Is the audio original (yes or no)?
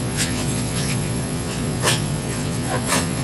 no